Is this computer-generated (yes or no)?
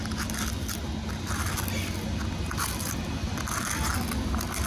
no